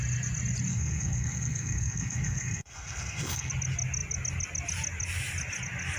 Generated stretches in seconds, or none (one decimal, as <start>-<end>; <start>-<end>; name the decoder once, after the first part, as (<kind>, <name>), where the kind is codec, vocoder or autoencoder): 0.7-3.5 (codec, SNAC)